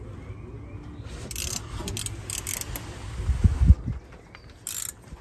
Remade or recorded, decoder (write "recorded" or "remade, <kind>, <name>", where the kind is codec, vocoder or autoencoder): recorded